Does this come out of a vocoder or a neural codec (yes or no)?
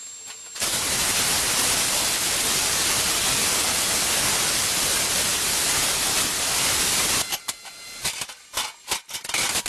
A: no